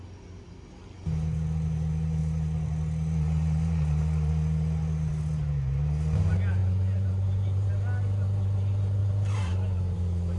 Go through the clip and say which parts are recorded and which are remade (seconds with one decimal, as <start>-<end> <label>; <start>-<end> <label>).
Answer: 0.0-6.6 recorded; 6.6-7.7 remade; 7.7-9.0 recorded; 9.0-10.0 remade; 10.0-10.4 recorded